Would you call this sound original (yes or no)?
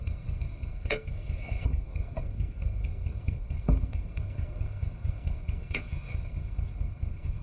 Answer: no